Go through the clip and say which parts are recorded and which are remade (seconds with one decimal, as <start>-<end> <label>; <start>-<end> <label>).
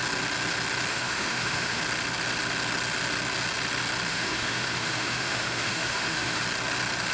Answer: 0.0-0.9 recorded; 0.9-1.8 remade; 1.8-4.1 recorded; 4.1-6.4 remade; 6.4-7.1 recorded